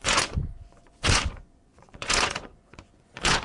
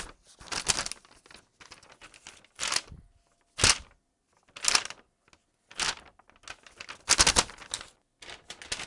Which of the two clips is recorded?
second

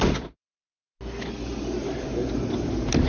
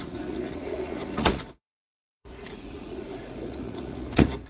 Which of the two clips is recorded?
first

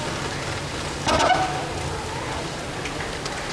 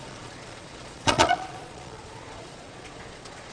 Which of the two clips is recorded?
first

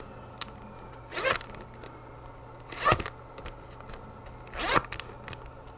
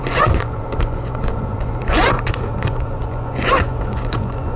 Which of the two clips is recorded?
first